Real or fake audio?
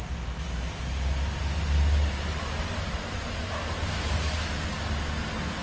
real